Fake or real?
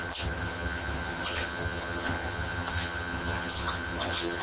fake